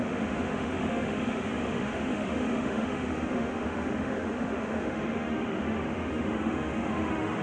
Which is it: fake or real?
fake